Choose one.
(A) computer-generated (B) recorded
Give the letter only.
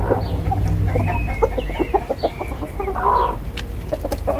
B